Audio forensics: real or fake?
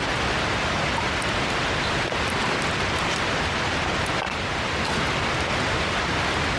real